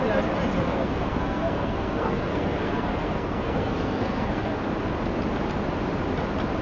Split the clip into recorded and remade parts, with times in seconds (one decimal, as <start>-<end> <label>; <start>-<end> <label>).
0.0-0.6 recorded; 0.6-4.6 remade; 4.6-6.6 recorded